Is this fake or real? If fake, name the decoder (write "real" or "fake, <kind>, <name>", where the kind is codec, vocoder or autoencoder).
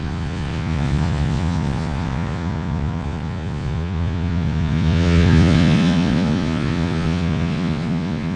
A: fake, vocoder, Vocos